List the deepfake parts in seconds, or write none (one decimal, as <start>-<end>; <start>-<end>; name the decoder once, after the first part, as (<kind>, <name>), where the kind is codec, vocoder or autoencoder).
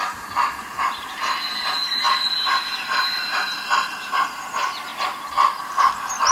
0.0-4.9 (vocoder, BigVGAN v2); 5.6-6.3